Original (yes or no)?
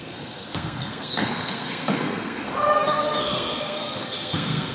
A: no